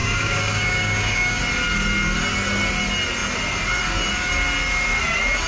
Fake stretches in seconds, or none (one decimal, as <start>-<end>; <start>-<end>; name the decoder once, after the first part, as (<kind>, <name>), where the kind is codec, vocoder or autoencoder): 0.0-1.4 (codec, DAC)